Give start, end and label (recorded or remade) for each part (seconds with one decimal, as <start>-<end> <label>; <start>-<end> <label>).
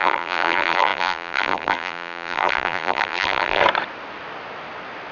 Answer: 0.0-3.6 remade; 3.6-5.1 recorded